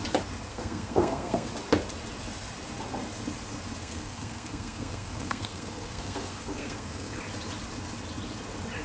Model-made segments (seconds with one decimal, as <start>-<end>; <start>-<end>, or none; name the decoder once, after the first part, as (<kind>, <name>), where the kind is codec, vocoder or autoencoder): 0.5-1.5 (codec, SNAC); 3.8-7.2

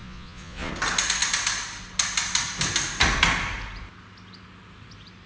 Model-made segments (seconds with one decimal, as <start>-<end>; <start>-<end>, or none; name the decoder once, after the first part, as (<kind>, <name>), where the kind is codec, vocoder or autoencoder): 0.0-0.7 (vocoder, Vocos)

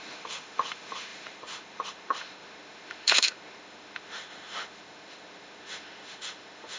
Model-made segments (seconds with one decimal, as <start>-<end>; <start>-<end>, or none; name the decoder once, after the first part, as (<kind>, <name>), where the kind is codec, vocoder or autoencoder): 0.0-6.8 (autoencoder, DAC-VAE)

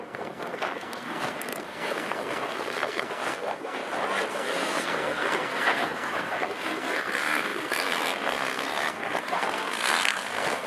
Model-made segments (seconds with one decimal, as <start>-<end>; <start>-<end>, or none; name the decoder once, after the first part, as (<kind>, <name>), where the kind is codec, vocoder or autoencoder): 0.0-3.8 (codec, SNAC); 4.3-10.7

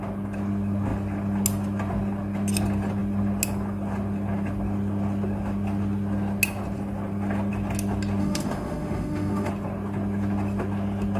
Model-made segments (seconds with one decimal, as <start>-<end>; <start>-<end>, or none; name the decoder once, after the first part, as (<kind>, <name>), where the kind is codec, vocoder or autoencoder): 8.2-9.5 (autoencoder, DAC-VAE)

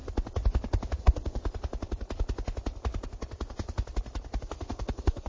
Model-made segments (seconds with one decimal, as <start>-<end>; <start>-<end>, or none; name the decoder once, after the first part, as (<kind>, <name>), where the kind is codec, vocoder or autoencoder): 1.0-1.4 (codec, SNAC); 4.4-5.3

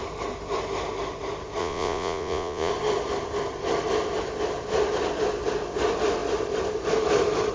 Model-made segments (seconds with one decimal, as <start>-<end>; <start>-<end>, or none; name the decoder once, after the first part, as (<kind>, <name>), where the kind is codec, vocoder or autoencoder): 1.6-2.7 (vocoder, Vocos)

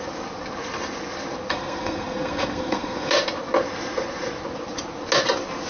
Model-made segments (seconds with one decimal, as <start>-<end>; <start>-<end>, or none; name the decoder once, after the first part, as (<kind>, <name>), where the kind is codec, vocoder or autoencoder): 1.5-3.1 (codec, SNAC)